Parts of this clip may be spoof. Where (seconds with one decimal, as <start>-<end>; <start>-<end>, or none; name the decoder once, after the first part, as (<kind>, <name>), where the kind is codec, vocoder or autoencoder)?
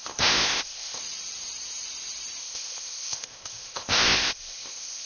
0.0-1.0 (codec, ZipCodec); 2.4-5.1